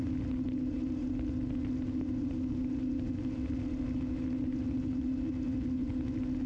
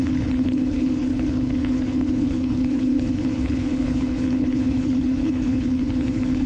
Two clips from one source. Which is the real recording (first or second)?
first